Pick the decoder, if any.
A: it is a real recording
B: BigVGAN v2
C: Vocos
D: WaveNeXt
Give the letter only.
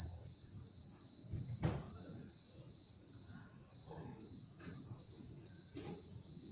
C